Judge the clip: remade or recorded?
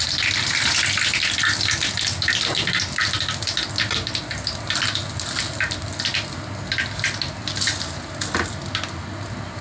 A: recorded